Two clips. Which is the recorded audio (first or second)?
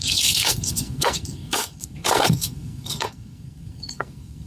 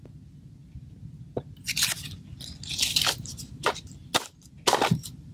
second